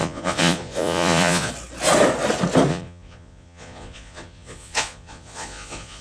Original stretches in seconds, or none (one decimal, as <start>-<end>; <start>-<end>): 1.5-2.7

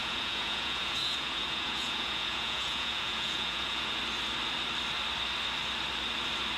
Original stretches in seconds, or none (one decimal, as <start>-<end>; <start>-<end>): 4.0-6.6